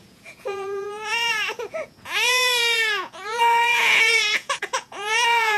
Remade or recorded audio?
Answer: remade